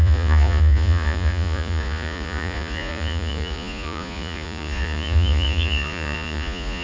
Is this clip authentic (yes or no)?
no